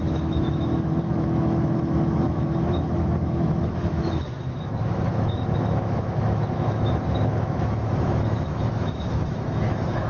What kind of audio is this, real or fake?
fake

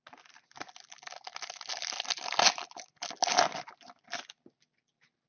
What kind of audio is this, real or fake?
real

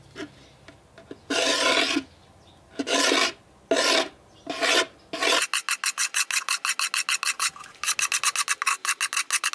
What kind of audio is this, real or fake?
real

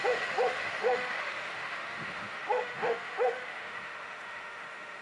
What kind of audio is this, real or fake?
fake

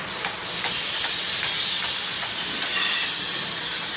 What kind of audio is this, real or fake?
real